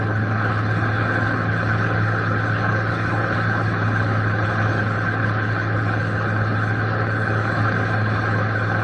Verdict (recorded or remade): remade